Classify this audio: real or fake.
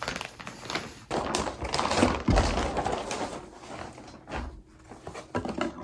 real